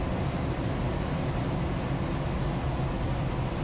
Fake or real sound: real